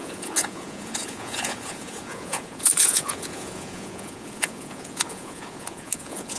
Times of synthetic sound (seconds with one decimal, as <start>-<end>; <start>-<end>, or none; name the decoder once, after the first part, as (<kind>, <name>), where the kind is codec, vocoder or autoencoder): 0.0-6.4 (vocoder, Vocos)